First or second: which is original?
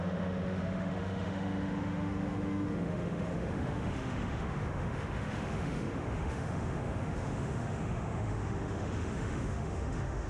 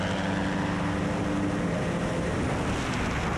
second